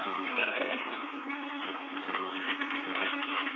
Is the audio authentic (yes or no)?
no